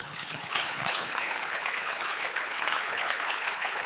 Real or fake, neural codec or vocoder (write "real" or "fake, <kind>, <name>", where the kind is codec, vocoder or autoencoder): fake, codec, HILCodec